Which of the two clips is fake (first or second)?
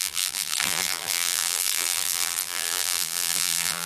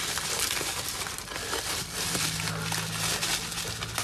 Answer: first